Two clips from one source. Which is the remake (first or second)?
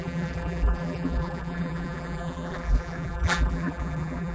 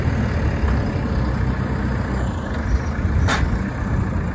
first